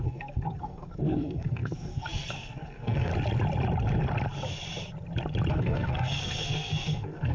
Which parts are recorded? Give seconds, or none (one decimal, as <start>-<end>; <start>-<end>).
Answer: 3.1-5.5